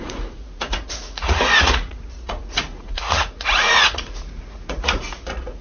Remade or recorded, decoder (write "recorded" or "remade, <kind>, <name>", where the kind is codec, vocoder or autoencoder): remade, vocoder, Vocos